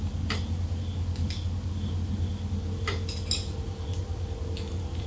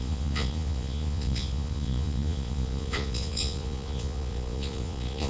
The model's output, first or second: second